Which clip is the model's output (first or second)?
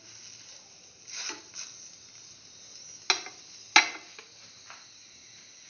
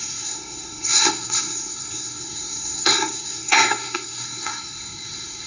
second